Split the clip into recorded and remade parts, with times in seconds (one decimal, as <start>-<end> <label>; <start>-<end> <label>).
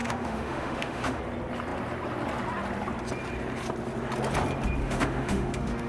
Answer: 0.0-1.2 remade; 1.2-4.8 recorded; 4.8-5.9 remade